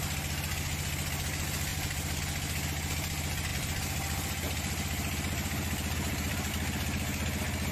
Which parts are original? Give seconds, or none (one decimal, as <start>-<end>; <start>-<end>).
0.0-1.7; 2.2-3.5; 6.5-7.7